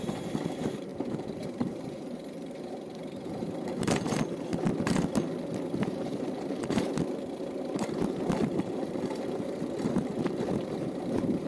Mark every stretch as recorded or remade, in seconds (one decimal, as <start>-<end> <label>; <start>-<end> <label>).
0.0-4.5 remade; 4.5-5.8 recorded; 5.8-6.9 remade; 6.9-7.4 recorded; 7.4-11.5 remade